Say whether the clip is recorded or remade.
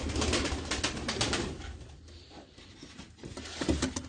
recorded